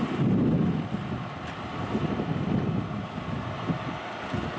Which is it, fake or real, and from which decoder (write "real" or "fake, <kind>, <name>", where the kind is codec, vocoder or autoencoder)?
real